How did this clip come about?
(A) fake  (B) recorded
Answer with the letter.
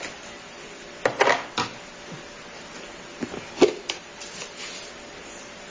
B